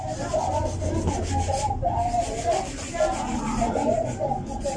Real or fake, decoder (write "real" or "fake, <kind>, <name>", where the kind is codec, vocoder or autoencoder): real